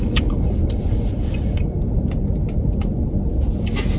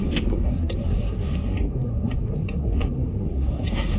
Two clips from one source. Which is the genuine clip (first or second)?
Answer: first